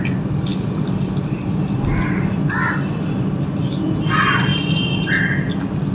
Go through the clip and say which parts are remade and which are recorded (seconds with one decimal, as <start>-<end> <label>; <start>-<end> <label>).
0.0-5.9 recorded